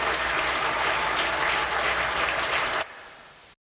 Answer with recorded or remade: recorded